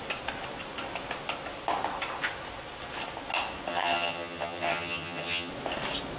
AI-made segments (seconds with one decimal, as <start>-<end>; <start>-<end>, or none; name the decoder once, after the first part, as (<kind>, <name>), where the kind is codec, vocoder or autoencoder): 3.7-5.5 (vocoder, HiFi-GAN)